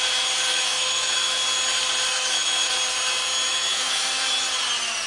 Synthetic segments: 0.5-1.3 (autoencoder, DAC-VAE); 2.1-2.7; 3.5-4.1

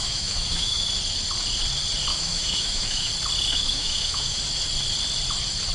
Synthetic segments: 0.0-0.8 (autoencoder, DAC-VAE); 2.1-3.1; 3.5-4.4

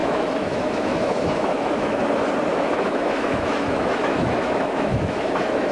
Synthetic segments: 0.0-2.0 (autoencoder, DAC-VAE); 2.5-5.7

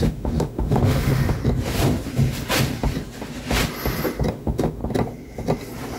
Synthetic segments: 0.0-1.4 (autoencoder, DAC-VAE); 4.3-4.8

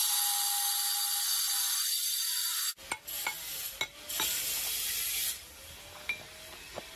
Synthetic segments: none

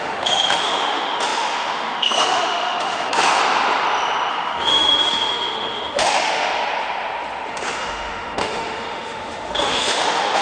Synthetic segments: 0.0-3.4 (autoencoder, DAC-VAE); 4.3-6.5; 7.5-10.4

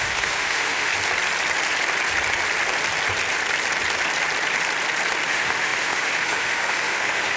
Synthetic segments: 0.0-0.9 (autoencoder, DAC-VAE); 5.3-7.4